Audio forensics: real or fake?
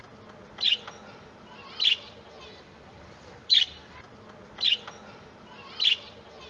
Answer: real